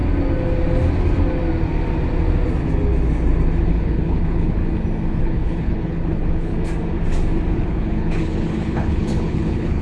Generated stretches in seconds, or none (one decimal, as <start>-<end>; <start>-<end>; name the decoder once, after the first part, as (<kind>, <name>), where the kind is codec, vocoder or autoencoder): 3.7-4.6 (codec, HILCodec); 5.2-6.5; 7.5-9.8